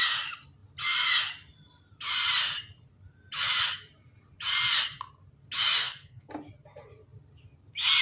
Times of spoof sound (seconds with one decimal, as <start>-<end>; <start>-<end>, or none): 5.8-6.3